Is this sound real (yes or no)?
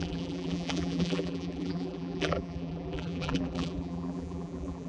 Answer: no